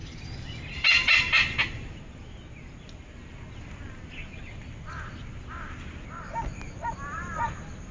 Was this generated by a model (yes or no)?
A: no